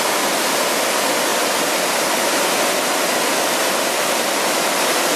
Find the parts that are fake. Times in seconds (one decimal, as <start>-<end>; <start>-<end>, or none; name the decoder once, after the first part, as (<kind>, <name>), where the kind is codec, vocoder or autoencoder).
none